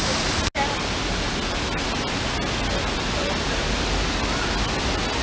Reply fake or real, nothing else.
real